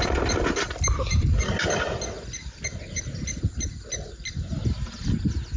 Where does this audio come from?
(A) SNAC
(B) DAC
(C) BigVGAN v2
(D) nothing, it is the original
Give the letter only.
D